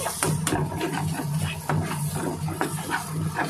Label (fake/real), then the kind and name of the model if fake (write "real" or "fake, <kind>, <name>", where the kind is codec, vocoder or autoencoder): real